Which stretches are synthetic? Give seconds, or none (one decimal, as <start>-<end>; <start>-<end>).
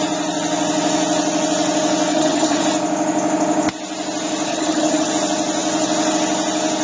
2.1-2.6; 4.5-5.1